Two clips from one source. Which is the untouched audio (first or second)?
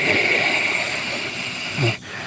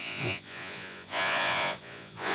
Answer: first